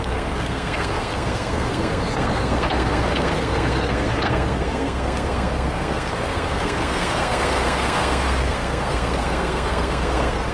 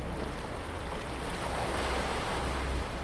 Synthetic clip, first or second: first